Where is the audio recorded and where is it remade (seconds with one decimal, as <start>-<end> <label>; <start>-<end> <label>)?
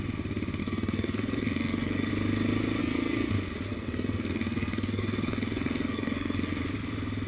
0.0-0.6 recorded; 0.6-2.1 remade; 2.1-2.8 recorded; 2.8-3.3 remade; 3.3-3.7 recorded; 3.7-6.6 remade; 6.6-7.3 recorded